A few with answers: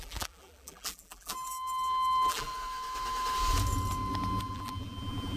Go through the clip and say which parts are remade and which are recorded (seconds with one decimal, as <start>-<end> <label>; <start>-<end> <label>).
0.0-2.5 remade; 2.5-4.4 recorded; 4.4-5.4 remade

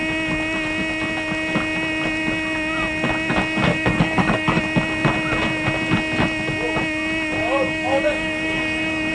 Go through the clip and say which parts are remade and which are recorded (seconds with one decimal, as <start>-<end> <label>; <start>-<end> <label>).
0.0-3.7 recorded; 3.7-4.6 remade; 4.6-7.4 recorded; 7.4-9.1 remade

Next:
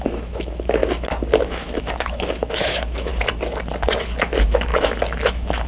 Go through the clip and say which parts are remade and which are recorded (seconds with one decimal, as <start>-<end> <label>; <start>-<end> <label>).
0.0-0.8 remade; 0.8-1.4 recorded; 1.4-3.1 remade; 3.1-4.2 recorded; 4.2-5.7 remade